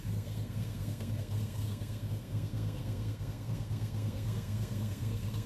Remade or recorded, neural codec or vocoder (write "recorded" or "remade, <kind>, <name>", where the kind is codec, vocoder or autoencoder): remade, codec, SNAC